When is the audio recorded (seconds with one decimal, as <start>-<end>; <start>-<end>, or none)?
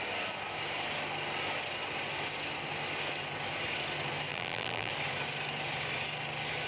0.0-4.3; 4.9-6.7